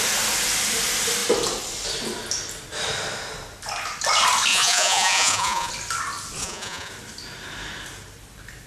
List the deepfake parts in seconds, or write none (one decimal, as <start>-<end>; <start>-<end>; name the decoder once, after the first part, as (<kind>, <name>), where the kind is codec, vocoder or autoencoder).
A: 4.5-5.7 (vocoder, Vocos); 6.4-6.9